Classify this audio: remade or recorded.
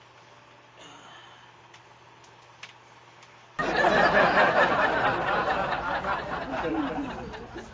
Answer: recorded